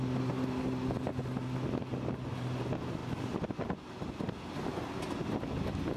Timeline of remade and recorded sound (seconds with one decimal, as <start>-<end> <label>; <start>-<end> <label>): 0.0-6.0 recorded

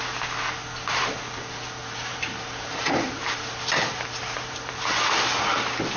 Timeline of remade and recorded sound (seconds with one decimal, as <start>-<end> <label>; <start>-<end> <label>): 0.0-1.8 recorded; 1.8-4.7 remade; 4.7-6.0 recorded

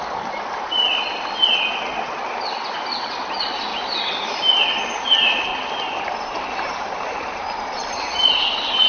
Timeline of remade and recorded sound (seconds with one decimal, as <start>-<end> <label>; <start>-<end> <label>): 0.0-5.5 recorded; 5.5-6.0 remade; 6.0-8.9 recorded

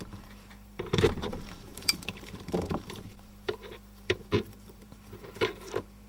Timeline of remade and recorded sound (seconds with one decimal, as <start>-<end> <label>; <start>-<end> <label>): 0.0-6.1 remade

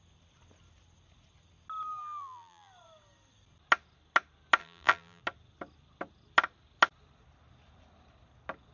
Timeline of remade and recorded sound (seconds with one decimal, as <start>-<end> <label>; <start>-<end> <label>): 0.0-2.0 recorded; 2.0-2.7 remade; 2.7-4.6 recorded; 4.6-5.2 remade; 5.2-8.7 recorded

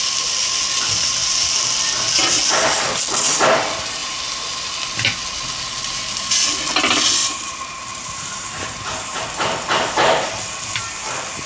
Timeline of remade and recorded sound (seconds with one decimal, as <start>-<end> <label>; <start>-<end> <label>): 0.0-7.2 recorded; 7.2-9.2 remade; 9.2-11.4 recorded